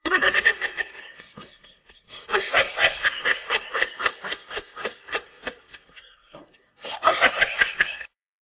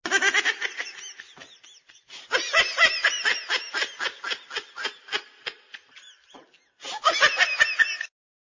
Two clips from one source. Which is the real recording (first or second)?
second